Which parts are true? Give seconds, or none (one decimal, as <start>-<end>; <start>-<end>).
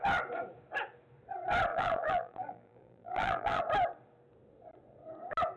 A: 0.0-1.7; 3.6-5.6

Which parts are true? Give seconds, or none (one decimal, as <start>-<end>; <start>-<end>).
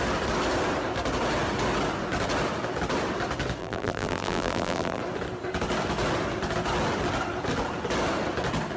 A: 0.0-3.6; 5.0-8.8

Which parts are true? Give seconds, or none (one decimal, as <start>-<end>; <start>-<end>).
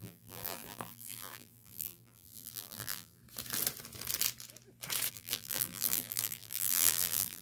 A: 3.2-5.1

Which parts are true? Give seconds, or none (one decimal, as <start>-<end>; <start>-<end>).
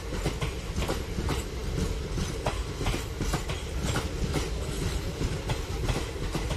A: 0.0-6.6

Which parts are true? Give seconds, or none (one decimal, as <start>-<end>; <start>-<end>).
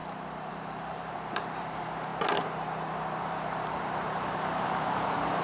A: 0.0-0.5; 2.1-3.2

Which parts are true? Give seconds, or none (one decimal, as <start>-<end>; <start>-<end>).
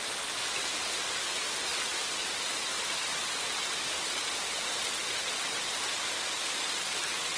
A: 0.0-7.4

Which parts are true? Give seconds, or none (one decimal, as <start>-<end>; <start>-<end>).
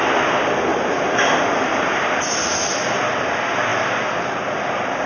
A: 0.0-0.7; 2.6-5.1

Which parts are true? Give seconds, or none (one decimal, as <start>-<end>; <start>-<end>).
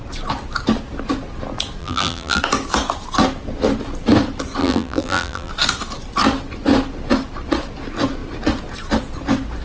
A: 0.0-1.8; 2.4-4.6; 5.5-9.6